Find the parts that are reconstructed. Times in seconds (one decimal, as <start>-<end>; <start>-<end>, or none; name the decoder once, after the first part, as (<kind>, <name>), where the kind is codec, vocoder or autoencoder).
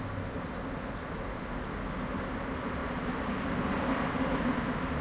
none